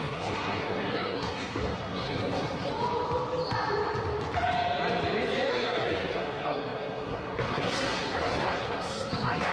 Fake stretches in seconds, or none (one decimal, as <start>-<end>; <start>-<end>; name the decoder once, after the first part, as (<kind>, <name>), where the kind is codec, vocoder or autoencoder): 0.0-2.7 (codec, SNAC); 5.5-9.5